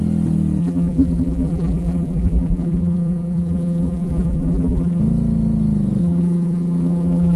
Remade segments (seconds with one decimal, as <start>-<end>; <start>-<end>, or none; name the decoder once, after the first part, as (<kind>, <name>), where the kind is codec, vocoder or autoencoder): 0.6-5.0 (vocoder, BigVGAN v2); 6.0-7.4